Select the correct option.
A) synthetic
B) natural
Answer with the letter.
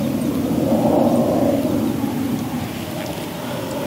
B